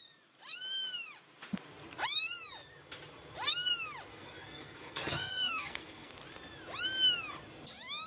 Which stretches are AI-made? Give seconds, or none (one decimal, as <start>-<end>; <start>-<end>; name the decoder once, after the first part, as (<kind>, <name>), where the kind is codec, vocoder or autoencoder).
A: 4.1-6.1 (codec, SNAC)